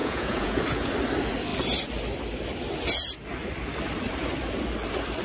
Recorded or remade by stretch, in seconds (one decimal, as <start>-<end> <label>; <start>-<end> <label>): 0.0-0.9 remade; 0.9-5.2 recorded